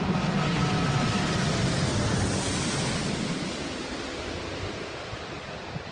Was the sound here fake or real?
real